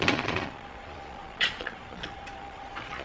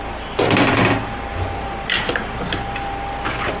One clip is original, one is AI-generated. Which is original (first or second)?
second